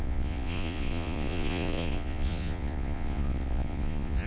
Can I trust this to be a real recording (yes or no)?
no